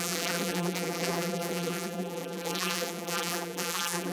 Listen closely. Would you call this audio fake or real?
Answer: fake